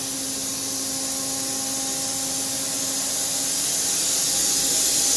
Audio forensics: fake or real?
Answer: real